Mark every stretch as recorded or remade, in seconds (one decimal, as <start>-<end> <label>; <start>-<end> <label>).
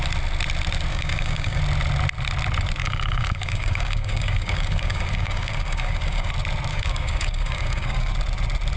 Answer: 0.0-0.9 recorded; 0.9-1.6 remade; 1.6-2.8 recorded; 2.8-6.3 remade; 6.3-6.7 recorded; 6.7-8.1 remade; 8.1-8.8 recorded